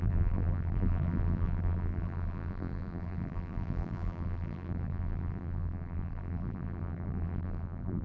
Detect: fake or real fake